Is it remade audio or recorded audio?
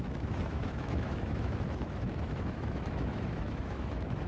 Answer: remade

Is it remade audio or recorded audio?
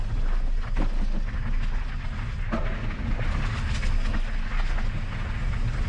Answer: recorded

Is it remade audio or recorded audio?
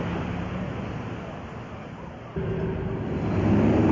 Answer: recorded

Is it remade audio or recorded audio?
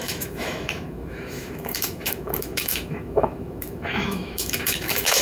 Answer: remade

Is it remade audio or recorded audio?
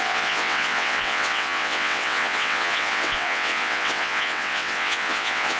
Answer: remade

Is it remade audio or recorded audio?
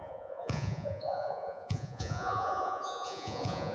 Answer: remade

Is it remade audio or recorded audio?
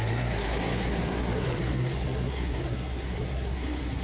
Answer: remade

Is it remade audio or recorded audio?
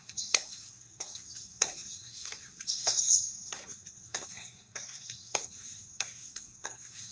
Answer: remade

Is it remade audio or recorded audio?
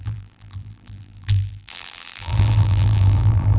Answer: remade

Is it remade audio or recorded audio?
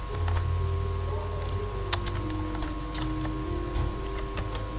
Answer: recorded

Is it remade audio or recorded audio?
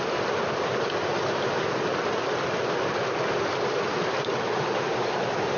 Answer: recorded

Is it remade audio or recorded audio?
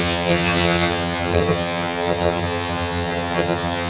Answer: remade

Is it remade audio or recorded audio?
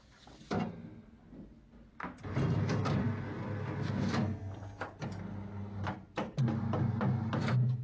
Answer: recorded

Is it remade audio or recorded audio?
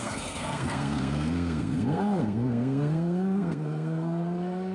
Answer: remade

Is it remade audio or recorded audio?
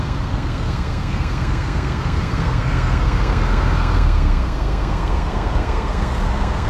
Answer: remade